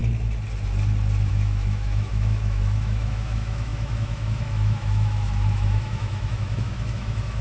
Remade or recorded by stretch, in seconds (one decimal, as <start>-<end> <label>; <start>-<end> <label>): 0.0-1.3 recorded; 1.3-7.4 remade